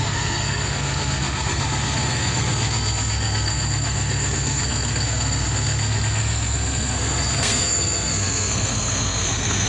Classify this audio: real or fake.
fake